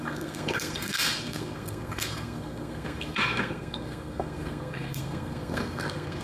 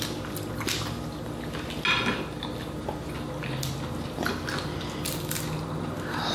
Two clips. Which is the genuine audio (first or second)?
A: second